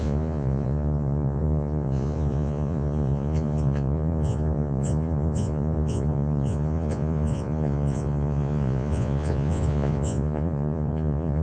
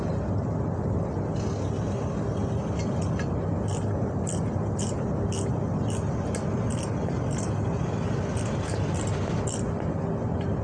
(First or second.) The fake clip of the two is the first